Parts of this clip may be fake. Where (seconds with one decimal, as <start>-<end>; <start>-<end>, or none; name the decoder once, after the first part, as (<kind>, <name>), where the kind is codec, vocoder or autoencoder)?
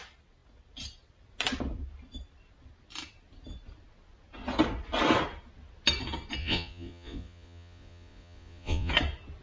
6.4-8.9 (vocoder, Vocos)